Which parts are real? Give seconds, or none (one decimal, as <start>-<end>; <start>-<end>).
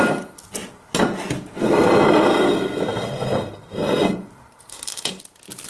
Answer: 0.0-4.7; 5.2-5.7